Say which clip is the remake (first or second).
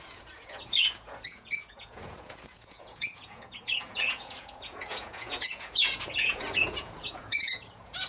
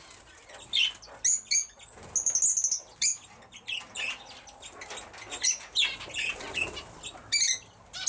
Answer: first